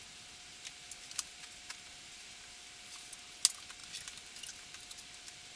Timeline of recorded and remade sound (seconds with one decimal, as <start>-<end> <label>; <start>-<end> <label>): 0.0-5.6 recorded